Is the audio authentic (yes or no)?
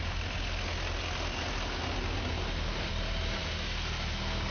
yes